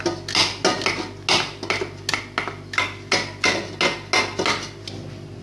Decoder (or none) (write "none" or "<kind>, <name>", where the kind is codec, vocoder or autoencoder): none